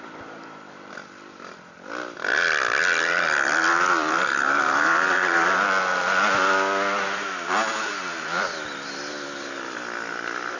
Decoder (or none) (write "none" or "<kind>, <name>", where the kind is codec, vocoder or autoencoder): vocoder, BigVGAN v2